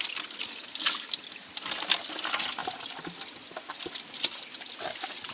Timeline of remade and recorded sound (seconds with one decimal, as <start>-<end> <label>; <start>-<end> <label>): 0.0-5.3 recorded